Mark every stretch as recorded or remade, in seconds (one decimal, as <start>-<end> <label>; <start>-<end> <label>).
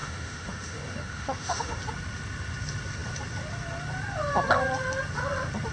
0.0-1.8 remade; 1.8-5.7 recorded